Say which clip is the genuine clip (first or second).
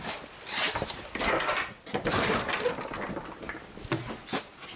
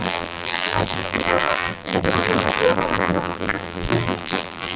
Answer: first